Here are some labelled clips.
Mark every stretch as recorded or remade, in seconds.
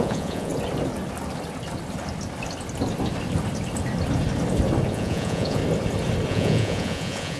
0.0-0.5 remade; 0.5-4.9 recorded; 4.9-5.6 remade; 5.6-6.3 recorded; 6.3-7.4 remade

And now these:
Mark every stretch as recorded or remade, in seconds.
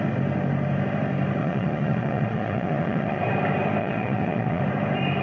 0.0-1.4 recorded; 1.4-3.2 remade; 3.2-3.8 recorded; 3.8-4.6 remade; 4.6-5.2 recorded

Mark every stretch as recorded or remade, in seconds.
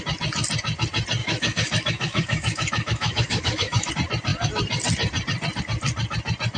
0.0-1.2 recorded; 1.2-3.9 remade; 3.9-6.6 recorded